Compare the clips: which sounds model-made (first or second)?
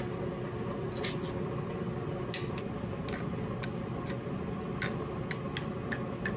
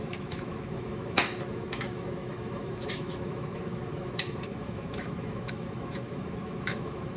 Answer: second